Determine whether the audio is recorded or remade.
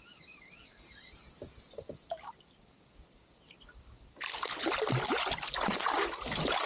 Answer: recorded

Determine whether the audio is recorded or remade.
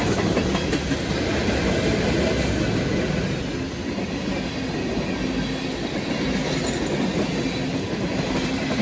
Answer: recorded